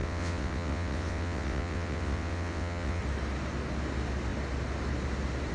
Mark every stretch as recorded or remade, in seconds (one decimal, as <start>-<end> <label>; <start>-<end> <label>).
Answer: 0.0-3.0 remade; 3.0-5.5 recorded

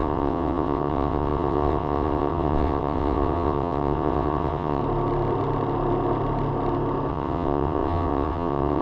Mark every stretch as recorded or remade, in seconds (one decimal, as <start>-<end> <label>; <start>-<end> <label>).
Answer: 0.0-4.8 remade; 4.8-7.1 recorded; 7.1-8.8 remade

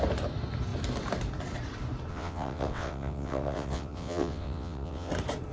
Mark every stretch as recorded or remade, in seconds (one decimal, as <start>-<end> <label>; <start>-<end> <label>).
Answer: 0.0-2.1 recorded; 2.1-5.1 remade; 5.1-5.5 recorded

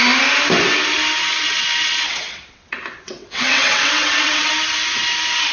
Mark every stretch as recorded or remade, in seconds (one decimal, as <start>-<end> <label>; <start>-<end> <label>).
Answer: 0.0-1.2 recorded; 1.2-4.5 remade; 4.5-5.5 recorded